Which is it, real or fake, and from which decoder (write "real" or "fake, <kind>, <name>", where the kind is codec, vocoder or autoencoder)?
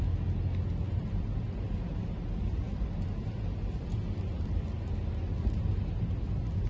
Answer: real